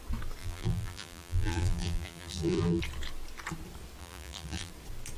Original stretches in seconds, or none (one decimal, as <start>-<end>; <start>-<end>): 0.0-0.4; 2.8-4.0; 4.7-5.2